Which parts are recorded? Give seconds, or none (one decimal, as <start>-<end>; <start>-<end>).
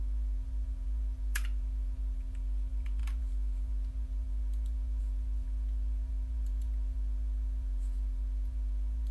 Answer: none